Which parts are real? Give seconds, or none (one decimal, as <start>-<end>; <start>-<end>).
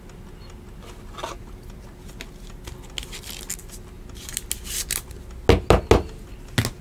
0.0-6.8